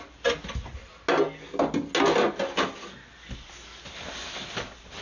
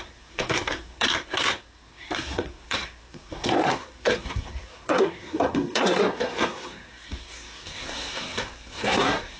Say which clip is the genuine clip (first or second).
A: first